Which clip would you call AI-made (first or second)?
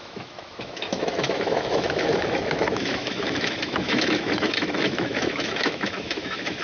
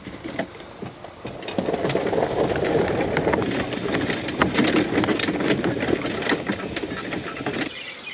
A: first